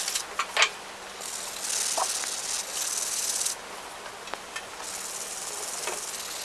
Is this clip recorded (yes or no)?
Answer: yes